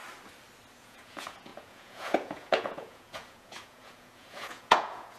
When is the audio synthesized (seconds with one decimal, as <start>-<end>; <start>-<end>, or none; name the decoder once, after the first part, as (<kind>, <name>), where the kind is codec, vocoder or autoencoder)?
0.8-5.2 (vocoder, Vocos)